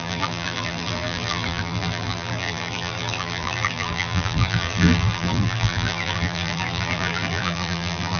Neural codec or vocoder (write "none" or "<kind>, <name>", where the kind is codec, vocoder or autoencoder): vocoder, BigVGAN v2